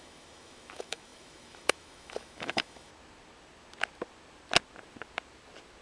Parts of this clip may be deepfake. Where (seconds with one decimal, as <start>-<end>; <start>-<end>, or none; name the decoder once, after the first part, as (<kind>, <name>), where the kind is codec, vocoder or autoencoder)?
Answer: 0.0-2.9 (autoencoder, DAC-VAE)